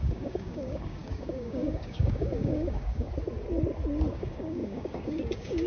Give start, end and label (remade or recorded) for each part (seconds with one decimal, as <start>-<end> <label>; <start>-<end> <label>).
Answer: 0.0-3.1 remade; 3.1-4.1 recorded; 4.1-5.7 remade

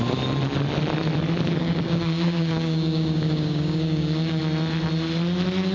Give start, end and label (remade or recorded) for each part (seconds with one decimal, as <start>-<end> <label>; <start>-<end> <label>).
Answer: 0.0-1.6 recorded; 1.6-4.4 remade; 4.4-5.7 recorded

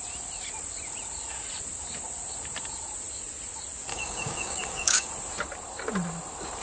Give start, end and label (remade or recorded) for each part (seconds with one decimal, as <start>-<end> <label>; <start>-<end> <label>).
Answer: 0.0-3.9 recorded; 3.9-5.1 remade; 5.1-6.6 recorded

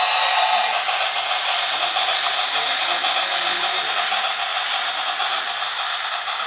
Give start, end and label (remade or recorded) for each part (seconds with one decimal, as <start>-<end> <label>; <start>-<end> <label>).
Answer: 0.0-6.5 recorded

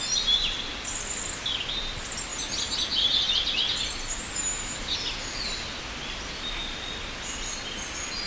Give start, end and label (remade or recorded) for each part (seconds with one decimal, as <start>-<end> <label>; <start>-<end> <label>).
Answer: 0.0-8.3 recorded